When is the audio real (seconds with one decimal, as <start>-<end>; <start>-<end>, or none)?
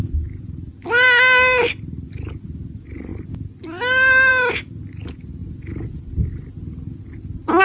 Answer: 0.0-7.6